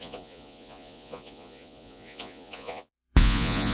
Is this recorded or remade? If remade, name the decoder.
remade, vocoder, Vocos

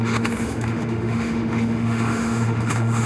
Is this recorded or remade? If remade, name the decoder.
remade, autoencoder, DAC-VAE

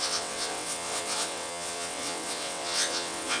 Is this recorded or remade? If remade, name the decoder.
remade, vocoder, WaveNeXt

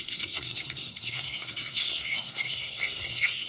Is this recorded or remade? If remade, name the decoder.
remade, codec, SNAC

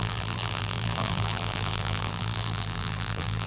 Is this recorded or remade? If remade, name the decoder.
remade, vocoder, BigVGAN v2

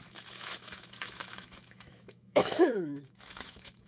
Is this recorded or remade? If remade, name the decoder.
remade, autoencoder, DAC-VAE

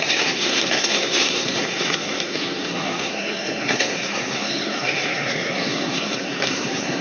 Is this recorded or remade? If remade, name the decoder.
remade, codec, SNAC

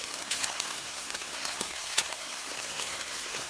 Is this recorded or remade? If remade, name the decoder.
remade, codec, SNAC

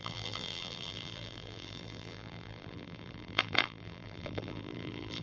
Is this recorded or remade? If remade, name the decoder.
remade, vocoder, BigVGAN v2